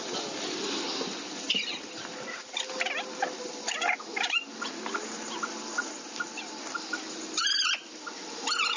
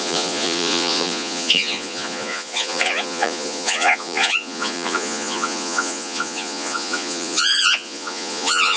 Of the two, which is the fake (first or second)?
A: second